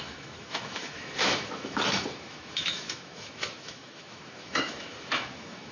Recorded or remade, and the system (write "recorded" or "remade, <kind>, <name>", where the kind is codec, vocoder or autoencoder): remade, autoencoder, DAC-VAE